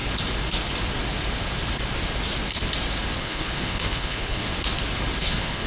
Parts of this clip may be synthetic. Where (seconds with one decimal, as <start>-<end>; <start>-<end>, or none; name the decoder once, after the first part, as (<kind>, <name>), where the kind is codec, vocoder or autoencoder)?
3.2-4.5 (codec, HILCodec); 5.2-5.7